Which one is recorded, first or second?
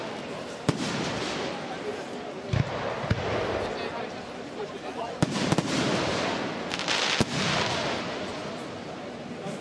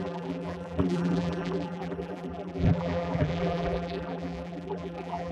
first